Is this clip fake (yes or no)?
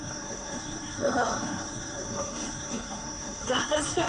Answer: yes